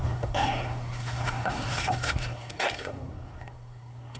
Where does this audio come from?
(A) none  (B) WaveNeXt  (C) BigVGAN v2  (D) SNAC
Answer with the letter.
D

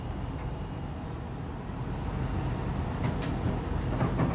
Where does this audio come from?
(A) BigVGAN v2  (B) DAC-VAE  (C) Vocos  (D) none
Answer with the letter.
D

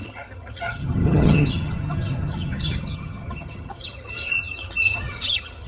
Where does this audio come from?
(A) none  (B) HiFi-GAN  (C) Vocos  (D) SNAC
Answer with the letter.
B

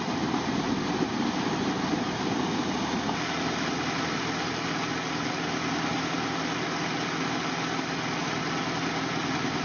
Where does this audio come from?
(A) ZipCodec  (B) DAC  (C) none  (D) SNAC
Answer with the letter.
C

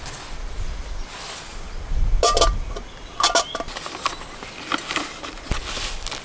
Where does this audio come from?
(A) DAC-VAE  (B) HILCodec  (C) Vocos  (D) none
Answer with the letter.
D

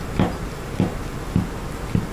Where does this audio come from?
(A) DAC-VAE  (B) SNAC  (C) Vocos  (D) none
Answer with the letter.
D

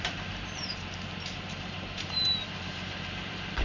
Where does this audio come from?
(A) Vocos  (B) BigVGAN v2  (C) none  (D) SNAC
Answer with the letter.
B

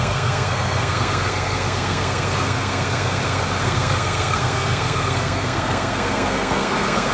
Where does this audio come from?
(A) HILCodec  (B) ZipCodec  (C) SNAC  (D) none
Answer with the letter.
C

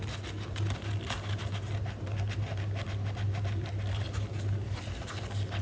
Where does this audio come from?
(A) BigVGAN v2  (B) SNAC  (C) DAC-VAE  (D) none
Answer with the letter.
D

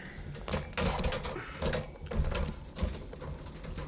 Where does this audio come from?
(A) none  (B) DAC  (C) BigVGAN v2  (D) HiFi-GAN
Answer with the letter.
A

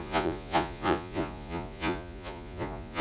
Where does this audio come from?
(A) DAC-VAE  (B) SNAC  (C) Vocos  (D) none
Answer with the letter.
C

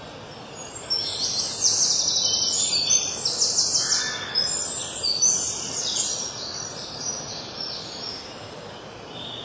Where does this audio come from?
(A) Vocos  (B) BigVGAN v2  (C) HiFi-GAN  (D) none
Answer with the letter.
D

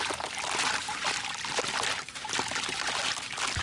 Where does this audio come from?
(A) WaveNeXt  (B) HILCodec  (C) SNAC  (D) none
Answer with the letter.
D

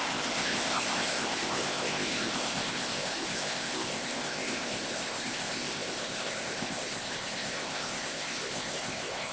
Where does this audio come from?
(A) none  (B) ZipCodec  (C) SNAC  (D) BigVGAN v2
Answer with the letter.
B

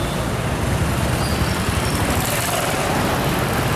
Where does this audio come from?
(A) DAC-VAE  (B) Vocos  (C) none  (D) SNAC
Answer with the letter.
C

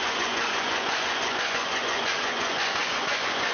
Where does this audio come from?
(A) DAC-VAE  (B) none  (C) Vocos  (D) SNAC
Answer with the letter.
C